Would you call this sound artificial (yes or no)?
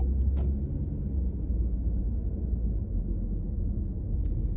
no